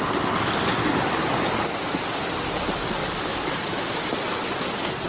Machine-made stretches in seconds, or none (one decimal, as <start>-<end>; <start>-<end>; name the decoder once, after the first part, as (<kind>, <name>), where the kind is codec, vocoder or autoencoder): 3.0-3.9 (codec, DAC)